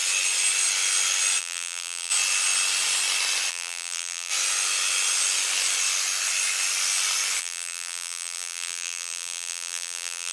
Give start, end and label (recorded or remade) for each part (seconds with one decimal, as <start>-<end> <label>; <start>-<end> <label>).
0.0-1.4 recorded; 1.4-2.1 remade; 2.1-3.5 recorded; 3.5-4.3 remade; 4.3-7.4 recorded; 7.4-10.3 remade